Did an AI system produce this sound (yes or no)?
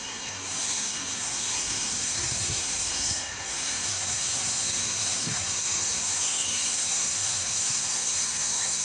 yes